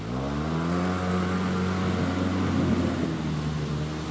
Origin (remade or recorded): recorded